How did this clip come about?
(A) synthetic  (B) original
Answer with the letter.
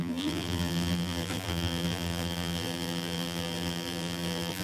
A